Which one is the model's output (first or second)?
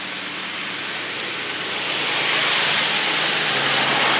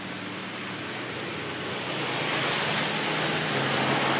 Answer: first